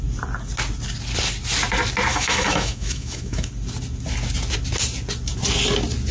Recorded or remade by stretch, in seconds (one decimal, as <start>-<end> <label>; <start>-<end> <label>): 0.0-2.1 recorded; 2.1-3.5 remade; 3.5-6.1 recorded